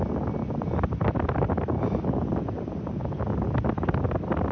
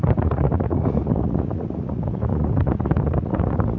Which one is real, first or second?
first